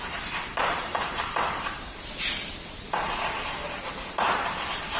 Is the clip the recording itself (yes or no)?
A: no